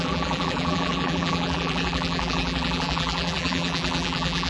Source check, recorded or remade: remade